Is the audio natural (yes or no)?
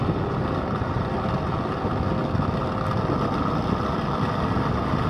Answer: yes